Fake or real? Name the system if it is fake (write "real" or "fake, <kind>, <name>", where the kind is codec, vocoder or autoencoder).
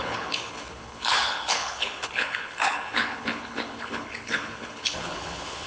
fake, codec, HILCodec